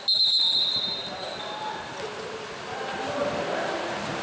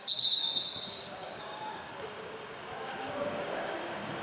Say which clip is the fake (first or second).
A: second